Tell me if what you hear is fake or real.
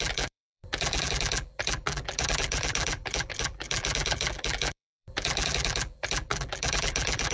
fake